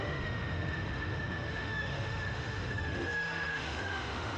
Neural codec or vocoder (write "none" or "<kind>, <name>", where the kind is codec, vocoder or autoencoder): autoencoder, DAC-VAE